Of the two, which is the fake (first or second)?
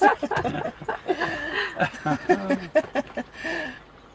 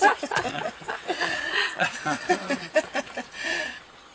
second